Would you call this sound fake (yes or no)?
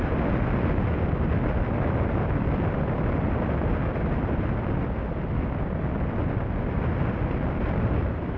no